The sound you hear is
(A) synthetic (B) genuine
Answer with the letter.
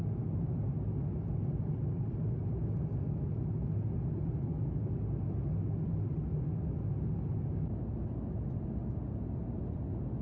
B